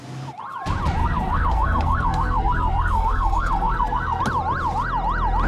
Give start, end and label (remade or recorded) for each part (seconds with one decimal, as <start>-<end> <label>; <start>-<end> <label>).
0.0-1.0 recorded; 1.0-4.2 remade; 4.2-5.5 recorded